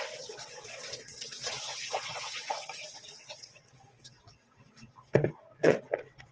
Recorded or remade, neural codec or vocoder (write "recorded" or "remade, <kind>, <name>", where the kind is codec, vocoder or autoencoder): remade, vocoder, WaveNeXt